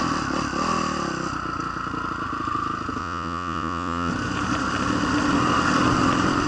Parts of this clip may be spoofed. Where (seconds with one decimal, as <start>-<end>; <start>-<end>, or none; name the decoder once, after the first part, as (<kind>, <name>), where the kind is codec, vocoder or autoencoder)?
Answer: 3.0-4.1 (vocoder, Vocos)